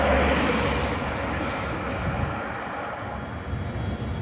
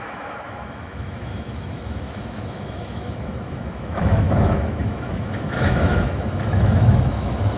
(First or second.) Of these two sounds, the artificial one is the second